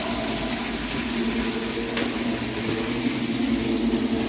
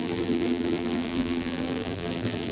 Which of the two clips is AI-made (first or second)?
second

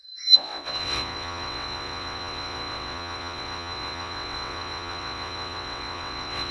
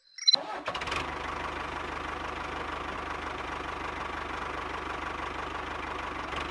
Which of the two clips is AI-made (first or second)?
first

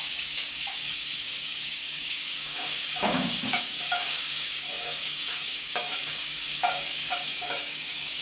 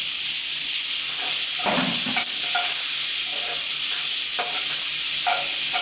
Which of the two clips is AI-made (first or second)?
first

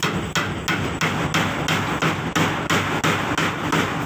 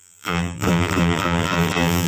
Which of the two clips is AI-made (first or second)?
second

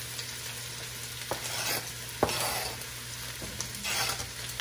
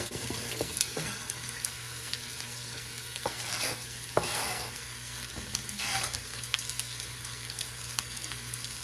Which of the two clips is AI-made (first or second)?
second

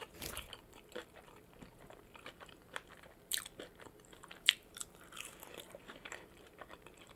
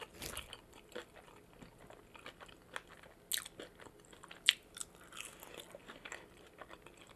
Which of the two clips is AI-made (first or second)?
first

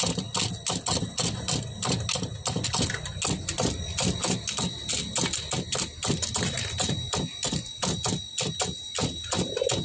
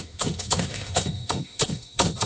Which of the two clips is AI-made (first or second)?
second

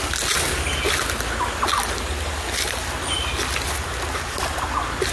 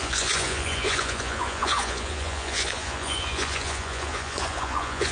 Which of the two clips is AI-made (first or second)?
second